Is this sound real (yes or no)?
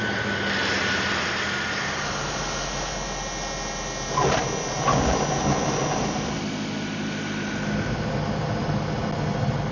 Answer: yes